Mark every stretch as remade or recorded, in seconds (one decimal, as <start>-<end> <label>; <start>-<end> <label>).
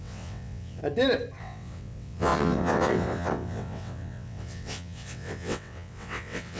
0.0-0.8 remade; 0.8-1.4 recorded; 1.4-6.6 remade